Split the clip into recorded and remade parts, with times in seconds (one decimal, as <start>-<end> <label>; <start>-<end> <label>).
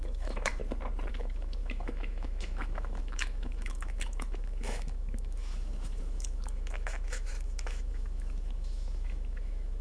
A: 0.0-0.6 remade; 0.6-1.1 recorded; 1.1-9.8 remade